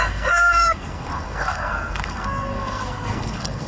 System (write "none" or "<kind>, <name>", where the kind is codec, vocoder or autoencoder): codec, SNAC